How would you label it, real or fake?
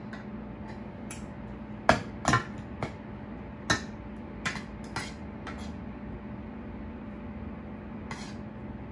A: real